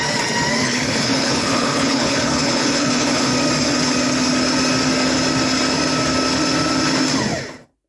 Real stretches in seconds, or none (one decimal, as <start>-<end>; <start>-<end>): 0.0-0.6; 3.3-7.9